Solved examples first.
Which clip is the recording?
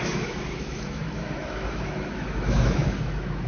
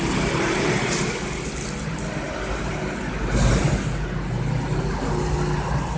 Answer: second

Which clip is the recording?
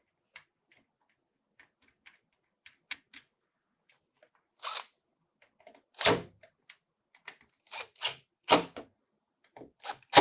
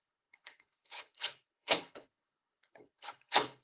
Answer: first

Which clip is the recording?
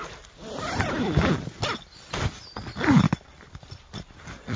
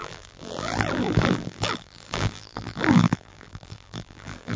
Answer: first